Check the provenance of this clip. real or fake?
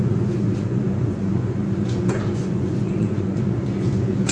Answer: fake